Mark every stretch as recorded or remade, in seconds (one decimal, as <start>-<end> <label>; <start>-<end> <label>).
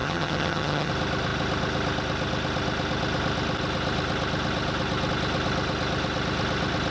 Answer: 0.0-0.9 remade; 0.9-6.9 recorded